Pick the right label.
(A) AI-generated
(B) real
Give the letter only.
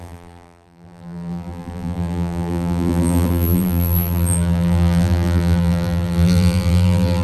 A